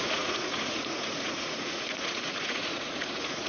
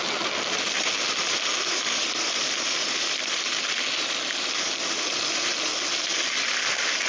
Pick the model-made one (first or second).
first